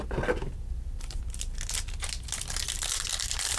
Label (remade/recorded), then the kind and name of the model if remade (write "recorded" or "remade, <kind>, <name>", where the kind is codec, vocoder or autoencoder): recorded